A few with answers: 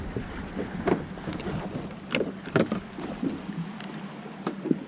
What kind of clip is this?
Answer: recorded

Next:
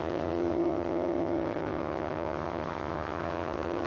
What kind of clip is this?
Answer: remade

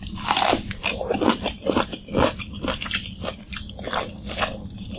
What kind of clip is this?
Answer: remade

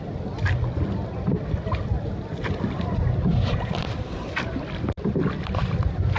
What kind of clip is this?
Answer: recorded